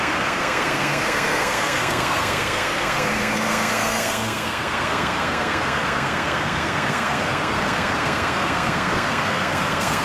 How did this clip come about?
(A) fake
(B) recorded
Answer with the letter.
A